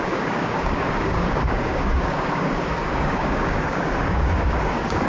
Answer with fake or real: fake